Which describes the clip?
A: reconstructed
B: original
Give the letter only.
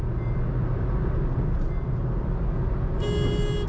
B